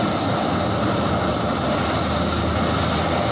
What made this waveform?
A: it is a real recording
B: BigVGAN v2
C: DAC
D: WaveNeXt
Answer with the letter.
A